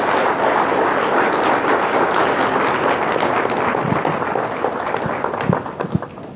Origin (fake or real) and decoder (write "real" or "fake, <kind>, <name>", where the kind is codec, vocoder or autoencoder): real